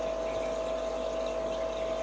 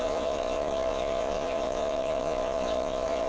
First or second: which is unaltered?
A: first